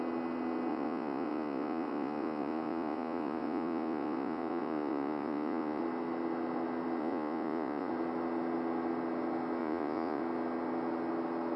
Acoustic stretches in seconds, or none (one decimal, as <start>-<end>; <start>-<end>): 0.0-0.7; 5.8-7.0; 7.9-9.6; 10.2-11.6